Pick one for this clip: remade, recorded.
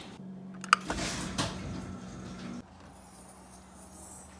recorded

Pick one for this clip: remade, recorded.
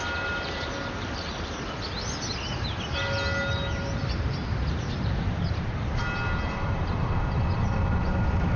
recorded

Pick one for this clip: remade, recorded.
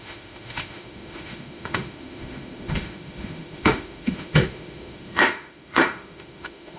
remade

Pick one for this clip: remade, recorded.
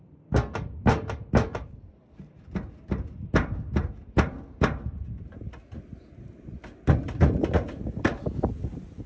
recorded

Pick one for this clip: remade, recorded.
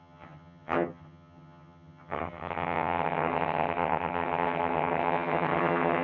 remade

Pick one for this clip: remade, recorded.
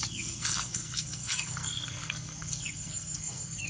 remade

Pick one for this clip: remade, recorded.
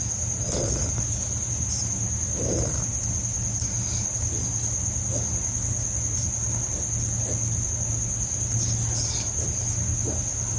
recorded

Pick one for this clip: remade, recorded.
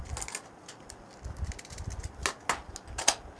recorded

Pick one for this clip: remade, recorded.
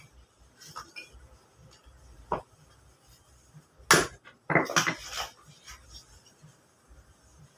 recorded